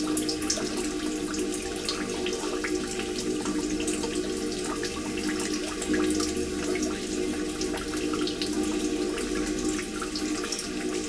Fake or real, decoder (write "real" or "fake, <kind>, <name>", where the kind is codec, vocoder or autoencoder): real